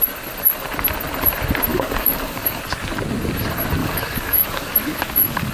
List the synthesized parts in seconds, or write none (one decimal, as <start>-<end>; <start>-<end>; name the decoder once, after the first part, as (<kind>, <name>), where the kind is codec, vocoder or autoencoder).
1.7-2.6 (codec, DAC); 3.8-5.5